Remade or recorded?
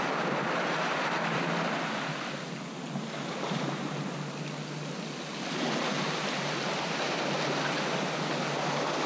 recorded